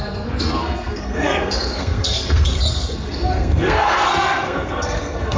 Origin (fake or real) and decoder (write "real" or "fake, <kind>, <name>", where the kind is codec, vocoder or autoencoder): fake, codec, SNAC